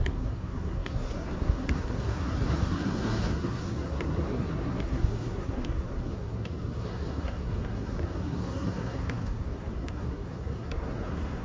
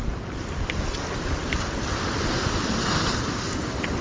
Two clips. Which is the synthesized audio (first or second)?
first